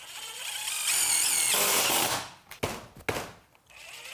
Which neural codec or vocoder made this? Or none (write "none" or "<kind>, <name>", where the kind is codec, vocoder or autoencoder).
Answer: none